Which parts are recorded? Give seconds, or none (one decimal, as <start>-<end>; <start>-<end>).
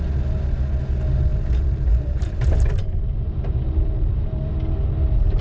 0.0-1.3; 4.5-5.4